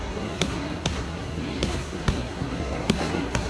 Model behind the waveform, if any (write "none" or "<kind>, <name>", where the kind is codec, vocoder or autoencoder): codec, SNAC